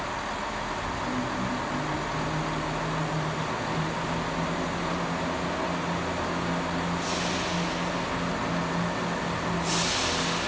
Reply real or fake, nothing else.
real